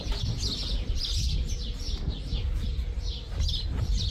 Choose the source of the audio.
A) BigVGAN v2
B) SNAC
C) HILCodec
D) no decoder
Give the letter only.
D